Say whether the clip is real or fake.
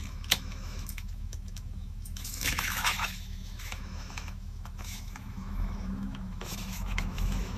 fake